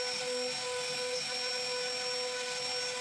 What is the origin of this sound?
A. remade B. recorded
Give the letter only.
B